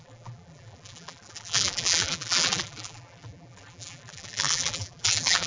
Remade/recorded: remade